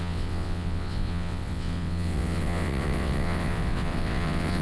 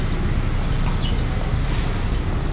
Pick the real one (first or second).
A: second